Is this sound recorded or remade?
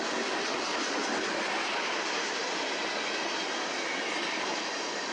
recorded